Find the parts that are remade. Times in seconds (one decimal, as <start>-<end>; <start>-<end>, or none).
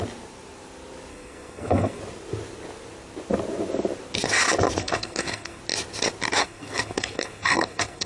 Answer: 1.1-2.0; 4.8-5.6; 6.4-8.1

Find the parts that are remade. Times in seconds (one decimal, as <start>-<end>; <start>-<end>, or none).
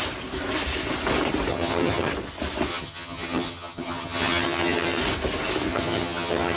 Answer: 1.5-2.1; 2.7-5.0; 5.7-6.6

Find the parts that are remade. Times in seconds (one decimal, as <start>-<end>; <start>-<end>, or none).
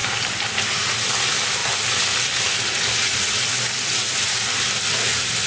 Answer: none